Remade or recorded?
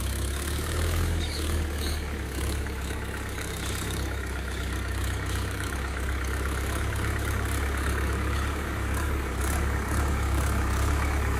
remade